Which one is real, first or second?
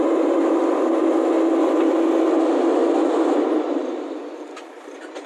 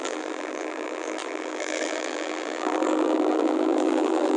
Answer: first